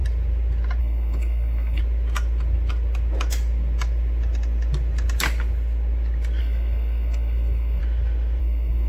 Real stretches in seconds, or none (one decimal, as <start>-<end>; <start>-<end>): 0.0-0.8; 1.8-6.4; 7.8-8.4